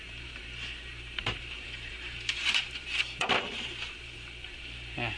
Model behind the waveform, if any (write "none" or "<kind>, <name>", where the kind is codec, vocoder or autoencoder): vocoder, BigVGAN v2